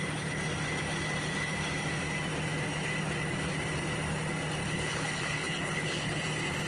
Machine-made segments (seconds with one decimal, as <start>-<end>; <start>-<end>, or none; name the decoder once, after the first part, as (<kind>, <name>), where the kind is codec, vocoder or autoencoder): 4.6-6.2 (codec, HILCodec)